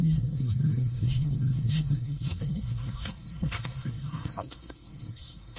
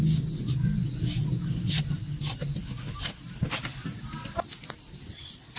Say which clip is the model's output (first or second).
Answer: first